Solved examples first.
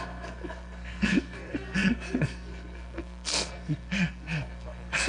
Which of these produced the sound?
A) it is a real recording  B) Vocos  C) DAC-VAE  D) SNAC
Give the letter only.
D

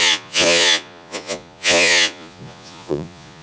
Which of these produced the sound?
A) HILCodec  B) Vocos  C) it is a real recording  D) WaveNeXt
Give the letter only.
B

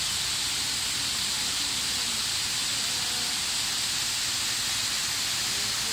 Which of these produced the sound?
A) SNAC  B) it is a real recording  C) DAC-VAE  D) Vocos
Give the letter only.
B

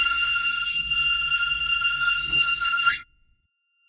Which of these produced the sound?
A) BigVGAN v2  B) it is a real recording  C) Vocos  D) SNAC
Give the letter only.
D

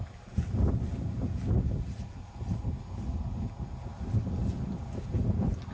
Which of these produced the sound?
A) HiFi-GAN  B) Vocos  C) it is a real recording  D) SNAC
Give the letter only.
C